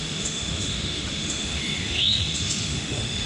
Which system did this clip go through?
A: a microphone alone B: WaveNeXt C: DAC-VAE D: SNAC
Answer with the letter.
C